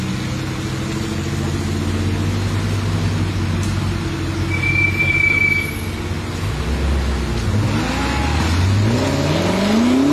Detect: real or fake real